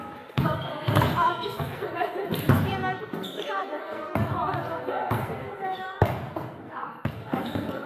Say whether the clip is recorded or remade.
remade